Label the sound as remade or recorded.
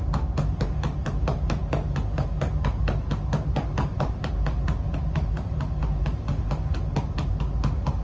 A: recorded